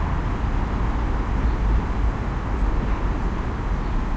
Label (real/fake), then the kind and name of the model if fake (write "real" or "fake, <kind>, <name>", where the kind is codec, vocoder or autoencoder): real